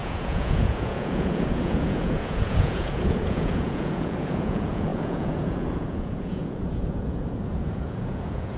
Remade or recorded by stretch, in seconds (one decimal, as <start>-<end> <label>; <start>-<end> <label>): 0.0-8.6 remade